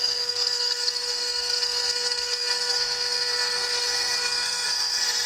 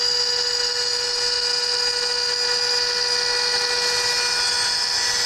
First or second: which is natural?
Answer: second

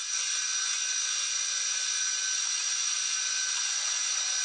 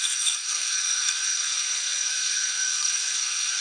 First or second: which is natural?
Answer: first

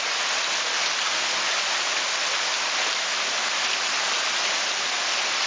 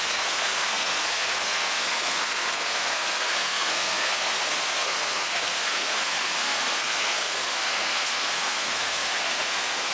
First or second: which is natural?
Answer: first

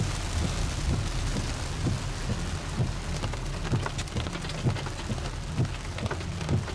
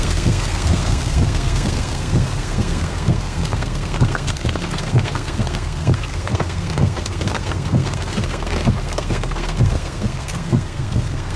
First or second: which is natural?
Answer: first